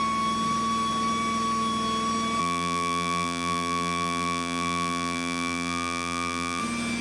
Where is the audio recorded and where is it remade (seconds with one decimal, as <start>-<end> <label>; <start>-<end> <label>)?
0.0-2.4 recorded; 2.4-6.6 remade; 6.6-7.0 recorded

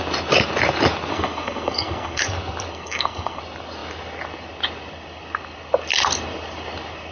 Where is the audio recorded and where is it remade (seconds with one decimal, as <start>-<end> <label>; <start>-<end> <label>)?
0.0-1.1 recorded; 1.1-2.2 remade; 2.2-2.7 recorded; 2.7-3.4 remade; 3.4-7.1 recorded

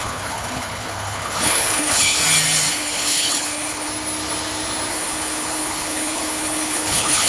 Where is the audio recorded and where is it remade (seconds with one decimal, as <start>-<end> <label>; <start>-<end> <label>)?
0.0-2.2 remade; 2.2-2.7 recorded; 2.7-3.9 remade; 3.9-4.9 recorded; 4.9-7.3 remade

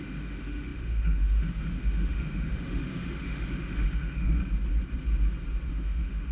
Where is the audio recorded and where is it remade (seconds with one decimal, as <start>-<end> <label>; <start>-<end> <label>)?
0.0-4.4 remade; 4.4-5.7 recorded; 5.7-6.3 remade

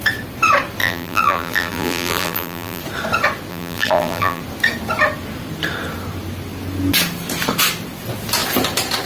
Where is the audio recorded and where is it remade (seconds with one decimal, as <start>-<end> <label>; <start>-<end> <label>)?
0.0-0.8 recorded; 0.8-2.8 remade; 2.8-3.5 recorded; 3.5-4.4 remade; 4.4-9.1 recorded